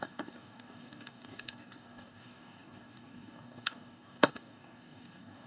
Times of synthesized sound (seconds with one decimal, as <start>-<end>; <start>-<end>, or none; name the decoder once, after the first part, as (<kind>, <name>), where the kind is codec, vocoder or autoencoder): 0.0-5.5 (codec, DAC)